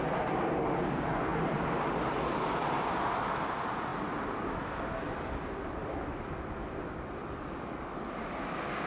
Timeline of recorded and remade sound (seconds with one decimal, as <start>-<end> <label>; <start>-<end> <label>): 0.0-8.9 recorded